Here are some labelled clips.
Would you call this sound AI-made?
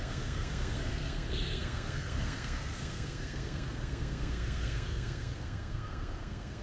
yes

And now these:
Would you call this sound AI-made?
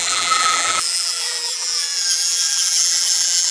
yes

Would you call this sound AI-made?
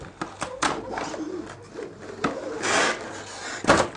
no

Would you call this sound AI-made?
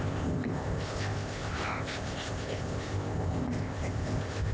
yes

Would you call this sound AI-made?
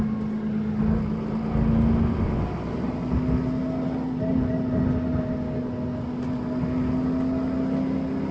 no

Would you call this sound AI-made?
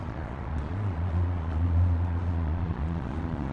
yes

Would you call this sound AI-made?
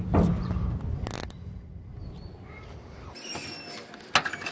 no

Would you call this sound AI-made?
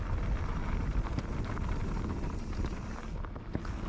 no